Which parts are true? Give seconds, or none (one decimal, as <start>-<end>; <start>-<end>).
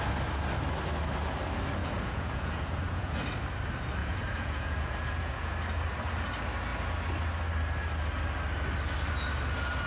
0.0-1.8; 3.2-4.0; 5.5-9.9